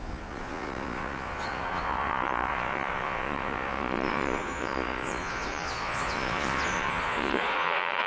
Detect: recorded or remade remade